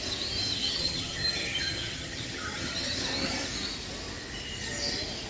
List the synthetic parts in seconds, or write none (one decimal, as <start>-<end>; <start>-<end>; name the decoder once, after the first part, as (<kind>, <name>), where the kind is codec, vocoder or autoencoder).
0.6-3.0 (vocoder, HiFi-GAN)